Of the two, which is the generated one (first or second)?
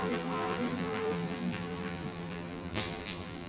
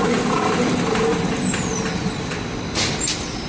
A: first